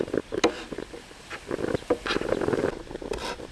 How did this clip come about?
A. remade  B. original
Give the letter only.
B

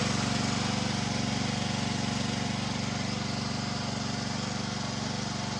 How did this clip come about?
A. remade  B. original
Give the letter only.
B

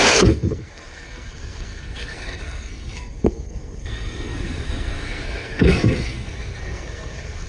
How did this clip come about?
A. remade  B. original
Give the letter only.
A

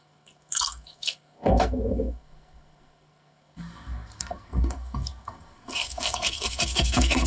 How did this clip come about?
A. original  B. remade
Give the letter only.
B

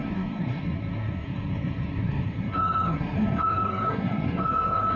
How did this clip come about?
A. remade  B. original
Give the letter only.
A